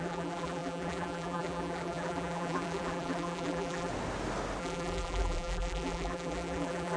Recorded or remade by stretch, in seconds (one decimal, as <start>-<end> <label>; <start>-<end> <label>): 0.0-3.9 remade; 3.9-4.6 recorded; 4.6-7.0 remade